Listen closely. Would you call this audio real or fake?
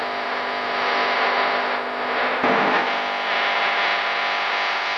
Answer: real